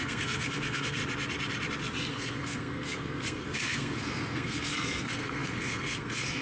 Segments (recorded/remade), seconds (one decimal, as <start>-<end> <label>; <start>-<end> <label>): 0.0-1.0 remade; 1.0-2.1 recorded; 2.1-6.4 remade

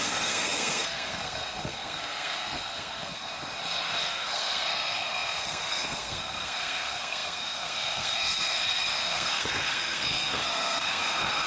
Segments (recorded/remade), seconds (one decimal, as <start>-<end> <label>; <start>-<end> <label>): 0.0-3.3 remade; 3.3-4.0 recorded; 4.0-11.5 remade